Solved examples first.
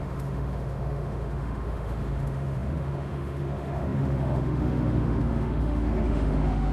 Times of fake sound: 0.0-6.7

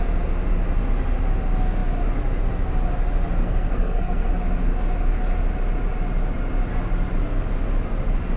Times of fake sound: 3.4-4.3

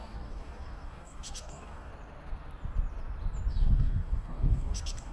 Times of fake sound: 0.0-1.9; 3.5-5.1

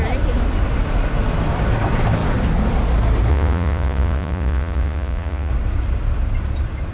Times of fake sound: 3.3-5.5

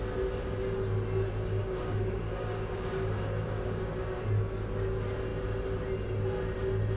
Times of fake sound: 1.6-4.2

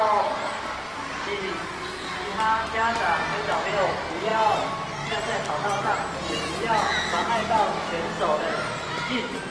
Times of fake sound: none

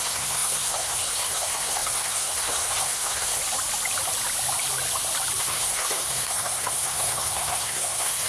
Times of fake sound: 0.0-3.4; 5.4-8.3